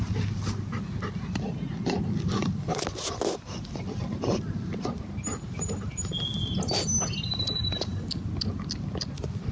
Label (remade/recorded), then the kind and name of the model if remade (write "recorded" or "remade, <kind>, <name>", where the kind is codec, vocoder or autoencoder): recorded